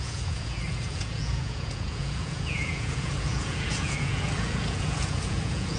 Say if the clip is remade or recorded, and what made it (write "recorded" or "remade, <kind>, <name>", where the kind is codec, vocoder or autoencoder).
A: remade, vocoder, Vocos